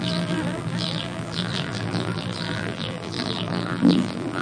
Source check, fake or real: fake